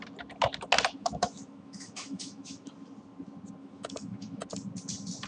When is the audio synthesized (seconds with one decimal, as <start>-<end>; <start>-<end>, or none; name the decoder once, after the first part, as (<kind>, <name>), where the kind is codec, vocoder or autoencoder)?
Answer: 1.0-2.7 (autoencoder, DAC-VAE); 3.6-4.4